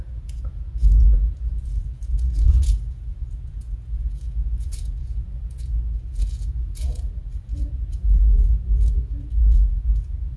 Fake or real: fake